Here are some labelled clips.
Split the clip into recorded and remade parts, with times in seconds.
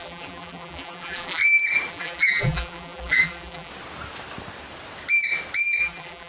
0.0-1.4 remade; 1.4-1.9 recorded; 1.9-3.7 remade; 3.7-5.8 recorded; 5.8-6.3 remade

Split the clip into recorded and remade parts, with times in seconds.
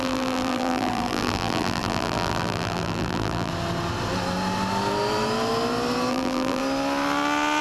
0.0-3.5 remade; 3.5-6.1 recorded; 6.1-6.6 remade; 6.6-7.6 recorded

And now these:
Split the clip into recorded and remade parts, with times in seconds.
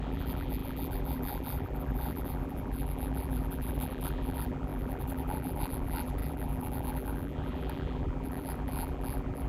0.0-9.5 remade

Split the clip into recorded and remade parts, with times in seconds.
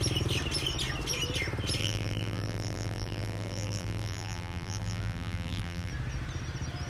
0.0-1.8 recorded; 1.8-5.9 remade; 5.9-6.9 recorded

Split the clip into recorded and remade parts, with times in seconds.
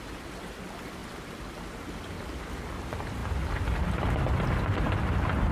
0.0-5.5 recorded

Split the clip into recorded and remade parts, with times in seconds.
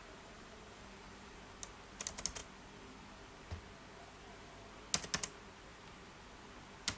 0.0-1.4 remade; 1.4-7.0 recorded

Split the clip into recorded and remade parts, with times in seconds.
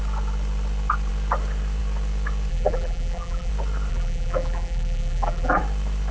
0.0-2.5 recorded; 2.5-3.5 remade; 3.5-3.9 recorded; 3.9-5.6 remade; 5.6-6.1 recorded